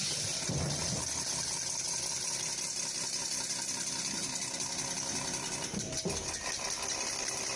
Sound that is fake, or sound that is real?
real